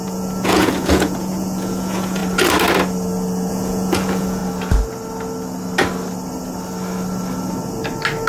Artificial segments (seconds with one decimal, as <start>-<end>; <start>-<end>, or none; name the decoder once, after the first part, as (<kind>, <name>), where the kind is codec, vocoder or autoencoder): 0.0-2.2 (vocoder, Vocos); 3.5-4.4

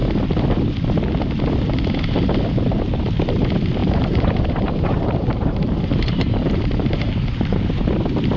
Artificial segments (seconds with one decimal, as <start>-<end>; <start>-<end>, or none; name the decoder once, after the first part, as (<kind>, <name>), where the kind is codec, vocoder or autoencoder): 3.8-8.0 (vocoder, BigVGAN v2)